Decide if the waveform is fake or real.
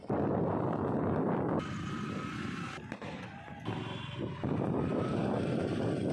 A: real